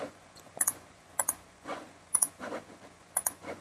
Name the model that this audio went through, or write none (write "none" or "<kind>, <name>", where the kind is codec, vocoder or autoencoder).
vocoder, Vocos